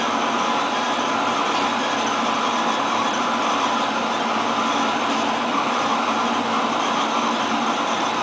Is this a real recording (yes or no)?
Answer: yes